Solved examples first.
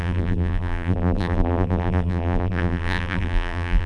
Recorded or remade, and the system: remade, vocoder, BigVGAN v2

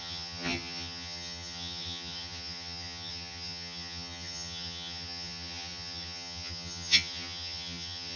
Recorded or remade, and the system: remade, vocoder, HiFi-GAN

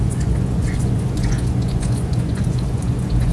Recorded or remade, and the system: remade, vocoder, Vocos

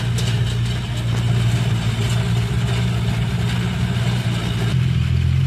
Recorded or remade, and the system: recorded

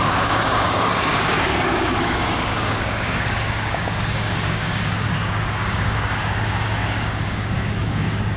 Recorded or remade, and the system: remade, codec, DAC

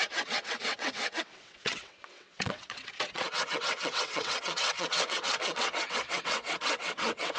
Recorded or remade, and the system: remade, vocoder, WaveNeXt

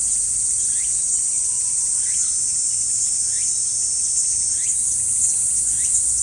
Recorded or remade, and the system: recorded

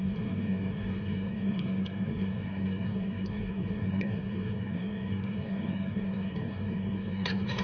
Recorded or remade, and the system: remade, codec, SNAC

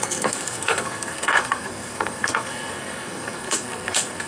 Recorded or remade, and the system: remade, codec, SNAC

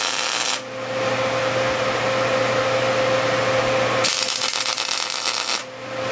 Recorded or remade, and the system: recorded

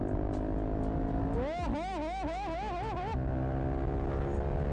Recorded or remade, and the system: recorded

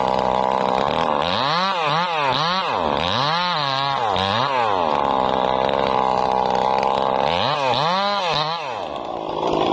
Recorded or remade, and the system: recorded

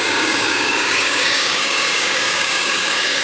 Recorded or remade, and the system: remade, codec, DAC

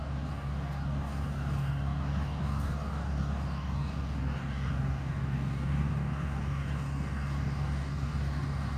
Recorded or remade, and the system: remade, codec, DAC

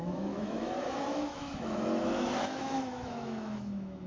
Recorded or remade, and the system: remade, autoencoder, DAC-VAE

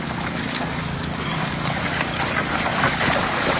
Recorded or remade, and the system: remade, codec, DAC